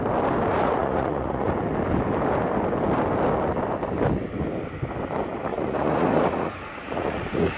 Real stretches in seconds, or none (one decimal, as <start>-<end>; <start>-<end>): 0.0-0.5; 1.5-5.5